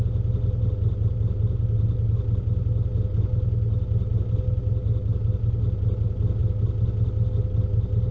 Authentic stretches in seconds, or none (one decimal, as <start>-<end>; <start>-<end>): 0.0-8.1